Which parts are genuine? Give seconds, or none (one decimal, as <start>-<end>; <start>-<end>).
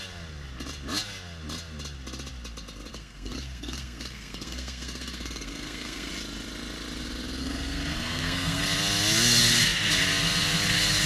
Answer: 0.0-2.9; 6.1-7.4; 8.6-11.1